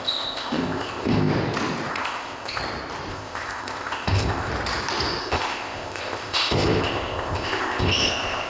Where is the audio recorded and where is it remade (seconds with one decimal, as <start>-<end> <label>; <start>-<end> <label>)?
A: 0.0-1.3 remade; 1.3-1.9 recorded; 1.9-2.6 remade; 2.6-3.1 recorded; 3.1-4.5 remade; 4.5-5.2 recorded; 5.2-8.5 remade